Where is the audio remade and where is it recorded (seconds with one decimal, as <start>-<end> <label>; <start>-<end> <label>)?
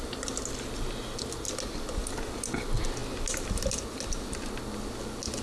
0.0-5.4 recorded